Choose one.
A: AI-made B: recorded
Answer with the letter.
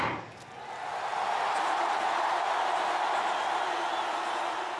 B